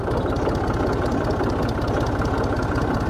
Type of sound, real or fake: real